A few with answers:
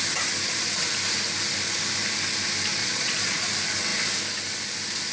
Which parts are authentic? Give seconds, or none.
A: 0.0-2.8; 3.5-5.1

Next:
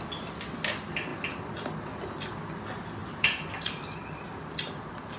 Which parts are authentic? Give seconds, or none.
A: 0.0-3.0; 3.7-5.2

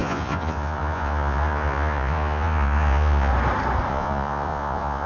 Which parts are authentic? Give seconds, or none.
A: 3.3-3.9

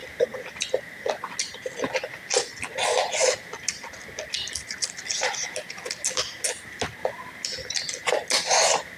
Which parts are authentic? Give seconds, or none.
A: 0.0-9.0

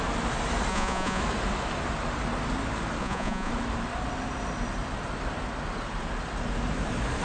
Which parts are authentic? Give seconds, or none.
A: 0.0-0.7; 1.2-3.0; 3.5-7.2

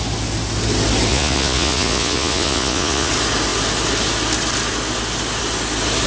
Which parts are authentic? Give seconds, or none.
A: 0.0-1.1; 3.1-6.1

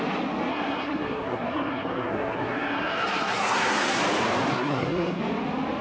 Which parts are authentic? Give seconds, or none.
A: 0.0-0.5; 4.0-4.5; 5.2-5.8

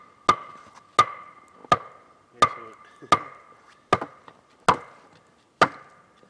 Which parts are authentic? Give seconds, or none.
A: 0.0-6.3